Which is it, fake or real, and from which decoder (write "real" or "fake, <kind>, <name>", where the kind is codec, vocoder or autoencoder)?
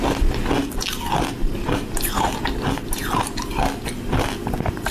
real